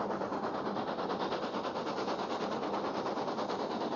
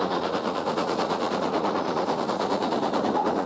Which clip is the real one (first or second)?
first